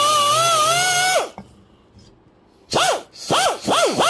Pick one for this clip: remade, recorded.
recorded